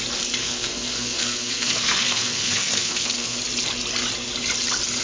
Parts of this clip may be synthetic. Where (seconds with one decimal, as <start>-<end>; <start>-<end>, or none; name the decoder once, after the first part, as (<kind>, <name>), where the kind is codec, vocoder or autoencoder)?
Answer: 0.4-3.4 (codec, SNAC)